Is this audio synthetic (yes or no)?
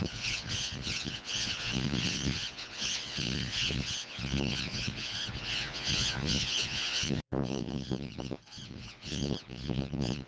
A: yes